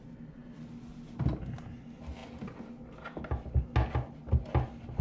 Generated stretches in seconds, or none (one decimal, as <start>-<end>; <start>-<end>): none